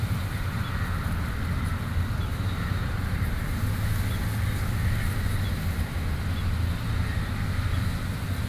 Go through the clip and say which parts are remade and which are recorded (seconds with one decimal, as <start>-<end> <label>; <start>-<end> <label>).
0.0-2.2 recorded; 2.2-3.7 remade; 3.7-8.5 recorded